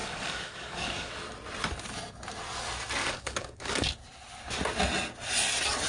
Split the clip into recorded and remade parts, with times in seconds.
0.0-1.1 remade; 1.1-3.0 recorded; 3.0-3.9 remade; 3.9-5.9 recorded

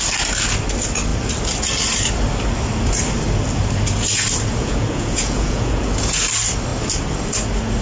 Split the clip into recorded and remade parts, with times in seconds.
0.0-4.6 recorded; 4.6-5.9 remade; 5.9-7.8 recorded

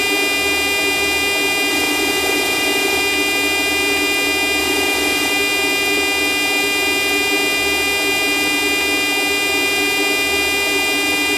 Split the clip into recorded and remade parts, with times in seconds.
0.0-1.7 recorded; 1.7-3.0 remade; 3.0-4.6 recorded; 4.6-5.3 remade; 5.3-11.4 recorded

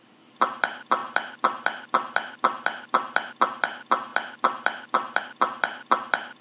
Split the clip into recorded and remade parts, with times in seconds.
0.0-6.4 remade

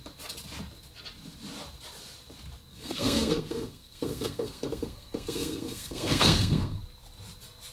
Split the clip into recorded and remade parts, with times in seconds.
0.0-2.7 recorded; 2.7-6.8 remade; 6.8-7.7 recorded